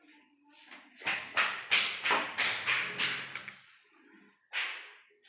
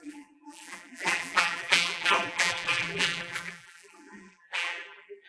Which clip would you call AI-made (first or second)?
second